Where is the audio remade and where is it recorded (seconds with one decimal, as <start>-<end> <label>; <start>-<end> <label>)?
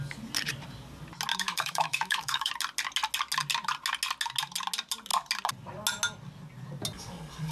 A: 0.0-1.3 recorded; 1.3-2.5 remade; 2.5-7.5 recorded